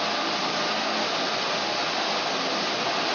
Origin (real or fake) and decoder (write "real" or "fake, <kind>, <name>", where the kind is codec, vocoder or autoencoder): real